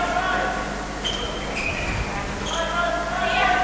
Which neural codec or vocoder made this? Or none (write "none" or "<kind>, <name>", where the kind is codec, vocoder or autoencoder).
none